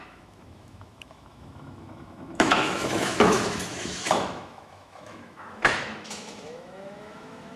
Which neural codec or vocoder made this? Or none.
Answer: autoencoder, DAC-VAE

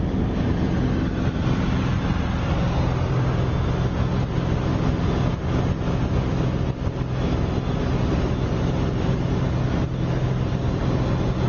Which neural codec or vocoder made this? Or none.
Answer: none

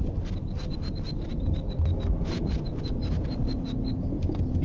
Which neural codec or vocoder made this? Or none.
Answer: none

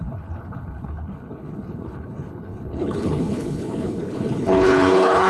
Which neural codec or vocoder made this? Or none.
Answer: codec, HILCodec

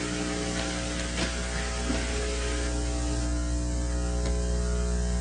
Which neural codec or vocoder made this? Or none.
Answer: none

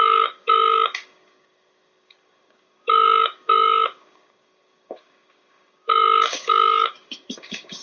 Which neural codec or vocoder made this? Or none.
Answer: codec, DAC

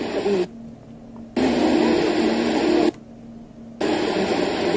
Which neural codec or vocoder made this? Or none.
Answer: none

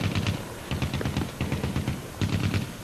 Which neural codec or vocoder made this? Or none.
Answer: none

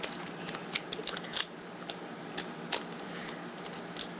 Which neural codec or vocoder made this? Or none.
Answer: none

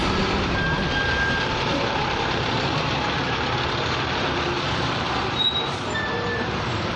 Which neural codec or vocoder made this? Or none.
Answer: vocoder, BigVGAN v2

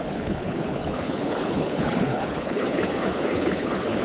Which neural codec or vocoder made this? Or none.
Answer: codec, HILCodec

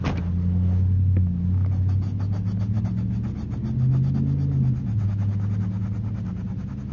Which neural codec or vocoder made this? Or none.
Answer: none